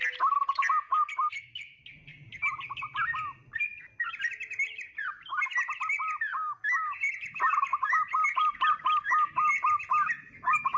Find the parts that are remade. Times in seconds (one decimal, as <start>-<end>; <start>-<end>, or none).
7.7-8.7